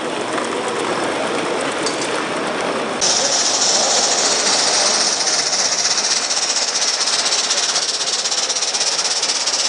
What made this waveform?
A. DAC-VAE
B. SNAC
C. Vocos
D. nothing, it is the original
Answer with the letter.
D